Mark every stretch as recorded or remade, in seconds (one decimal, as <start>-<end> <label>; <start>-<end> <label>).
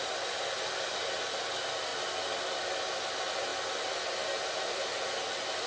0.0-1.9 remade; 1.9-2.5 recorded; 2.5-3.5 remade; 3.5-4.6 recorded; 4.6-5.7 remade